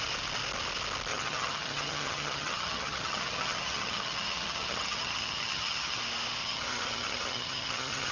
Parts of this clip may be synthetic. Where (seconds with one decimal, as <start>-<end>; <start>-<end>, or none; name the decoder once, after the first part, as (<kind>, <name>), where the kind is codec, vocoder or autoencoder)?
1.1-6.0 (vocoder, HiFi-GAN); 6.4-8.1